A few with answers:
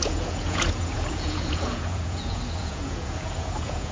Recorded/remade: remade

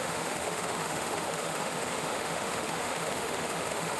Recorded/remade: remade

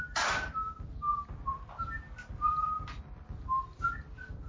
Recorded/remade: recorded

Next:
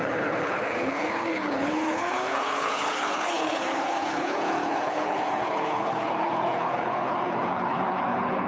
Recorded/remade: remade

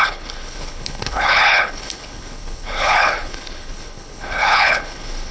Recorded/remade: remade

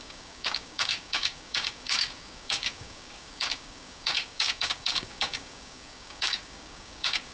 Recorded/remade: remade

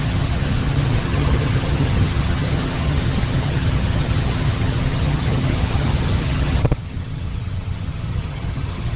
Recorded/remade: remade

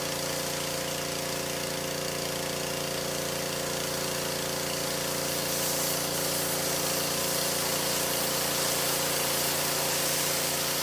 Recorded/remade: recorded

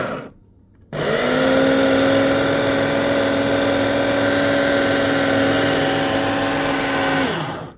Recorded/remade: recorded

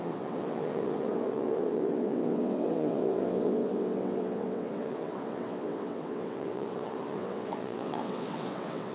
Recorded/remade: remade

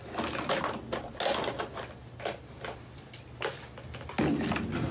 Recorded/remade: recorded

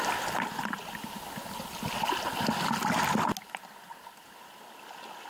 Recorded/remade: recorded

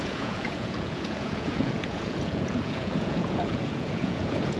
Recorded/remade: remade